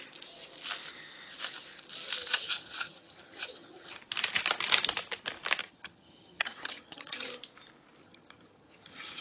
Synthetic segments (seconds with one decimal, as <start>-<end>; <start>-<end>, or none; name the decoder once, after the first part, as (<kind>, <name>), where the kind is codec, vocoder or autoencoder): 2.2-4.0 (vocoder, HiFi-GAN); 5.6-7.3; 8.0-9.2